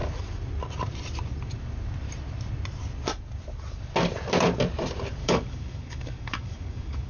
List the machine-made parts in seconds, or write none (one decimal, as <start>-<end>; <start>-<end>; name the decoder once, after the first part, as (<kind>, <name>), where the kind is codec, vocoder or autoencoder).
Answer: 5.2-7.1 (codec, DAC)